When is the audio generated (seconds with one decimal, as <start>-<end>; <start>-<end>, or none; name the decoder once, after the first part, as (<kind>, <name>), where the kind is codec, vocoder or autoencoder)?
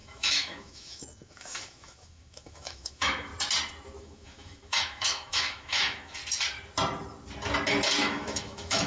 0.0-3.3 (autoencoder, DAC-VAE); 4.0-6.2; 8.0-8.9